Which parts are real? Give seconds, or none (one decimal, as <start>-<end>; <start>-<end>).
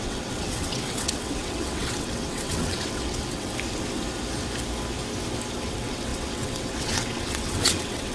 3.5-5.6